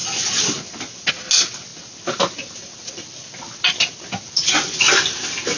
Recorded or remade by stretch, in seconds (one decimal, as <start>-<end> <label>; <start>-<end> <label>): 0.0-5.6 recorded